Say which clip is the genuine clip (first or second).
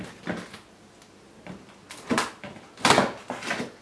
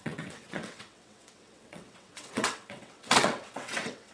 first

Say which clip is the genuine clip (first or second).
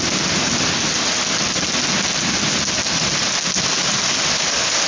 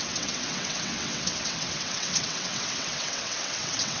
first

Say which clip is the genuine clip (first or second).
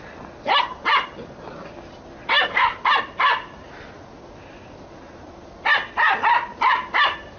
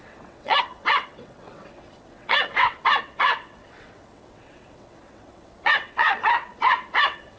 first